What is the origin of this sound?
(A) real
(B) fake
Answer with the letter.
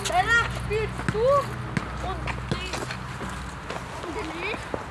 A